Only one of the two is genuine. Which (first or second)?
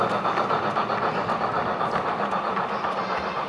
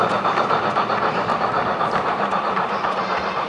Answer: first